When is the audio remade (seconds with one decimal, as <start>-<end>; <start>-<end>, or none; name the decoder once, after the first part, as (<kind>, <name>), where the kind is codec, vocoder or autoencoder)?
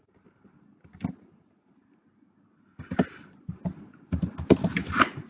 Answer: none